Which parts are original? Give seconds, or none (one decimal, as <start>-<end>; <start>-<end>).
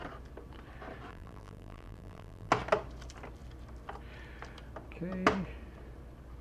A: 0.0-1.1; 2.5-6.4